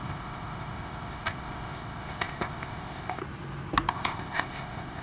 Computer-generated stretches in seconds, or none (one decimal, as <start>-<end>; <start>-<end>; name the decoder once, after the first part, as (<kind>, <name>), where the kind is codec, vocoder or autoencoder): 0.0-3.2 (codec, ZipCodec); 3.9-5.0